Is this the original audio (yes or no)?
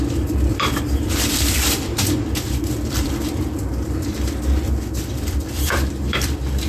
no